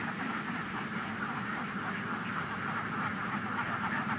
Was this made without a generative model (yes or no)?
no